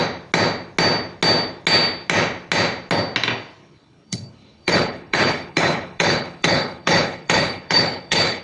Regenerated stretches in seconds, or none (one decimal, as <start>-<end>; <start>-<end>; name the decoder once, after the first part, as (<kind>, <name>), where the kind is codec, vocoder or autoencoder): 3.6-8.4 (codec, HILCodec)